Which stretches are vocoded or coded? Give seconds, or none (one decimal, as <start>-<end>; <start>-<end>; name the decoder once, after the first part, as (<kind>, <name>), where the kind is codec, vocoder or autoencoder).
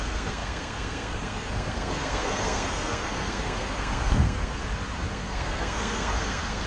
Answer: 0.0-4.6 (codec, SNAC); 5.1-6.7